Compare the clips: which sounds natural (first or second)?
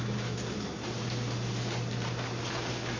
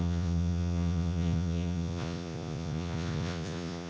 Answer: first